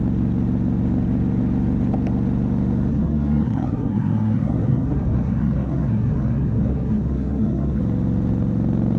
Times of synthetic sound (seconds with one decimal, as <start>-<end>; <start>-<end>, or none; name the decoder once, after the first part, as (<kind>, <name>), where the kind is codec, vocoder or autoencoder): 2.9-7.8 (codec, SNAC)

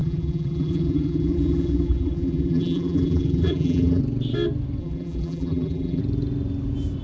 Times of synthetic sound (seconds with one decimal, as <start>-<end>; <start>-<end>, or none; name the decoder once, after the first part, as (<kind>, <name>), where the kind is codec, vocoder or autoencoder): 0.0-4.0 (vocoder, BigVGAN v2); 4.8-6.0